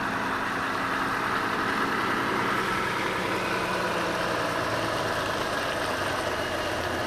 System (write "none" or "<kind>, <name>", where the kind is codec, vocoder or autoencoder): none